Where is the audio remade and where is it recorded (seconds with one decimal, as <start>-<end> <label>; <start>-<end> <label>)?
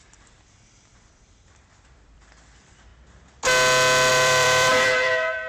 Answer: 0.0-2.9 remade; 2.9-4.1 recorded; 4.1-5.5 remade